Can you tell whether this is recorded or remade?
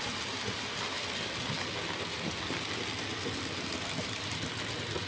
recorded